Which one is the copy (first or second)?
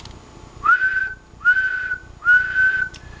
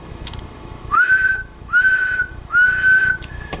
second